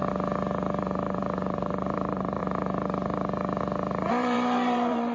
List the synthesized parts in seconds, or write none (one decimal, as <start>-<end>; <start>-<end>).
0.8-2.4; 4.1-5.1